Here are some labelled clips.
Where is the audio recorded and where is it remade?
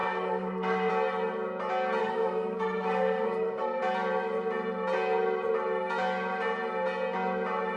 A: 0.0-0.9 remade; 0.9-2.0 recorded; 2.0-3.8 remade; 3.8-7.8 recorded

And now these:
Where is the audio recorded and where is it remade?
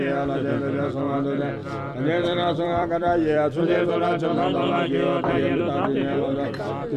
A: 0.0-1.6 recorded; 1.6-5.6 remade; 5.6-7.0 recorded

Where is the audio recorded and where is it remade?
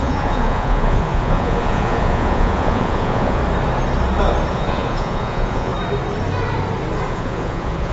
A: 0.0-3.4 remade; 3.4-4.5 recorded; 4.5-5.7 remade; 5.7-7.1 recorded; 7.1-7.9 remade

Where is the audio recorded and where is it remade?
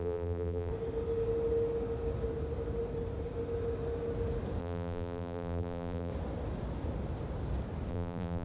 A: 0.0-0.7 remade; 0.7-4.6 recorded; 4.6-6.1 remade; 6.1-7.9 recorded; 7.9-8.4 remade